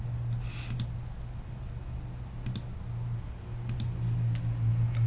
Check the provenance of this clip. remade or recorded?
recorded